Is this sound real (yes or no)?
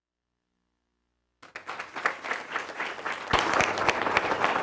yes